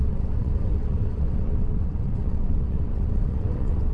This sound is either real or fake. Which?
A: fake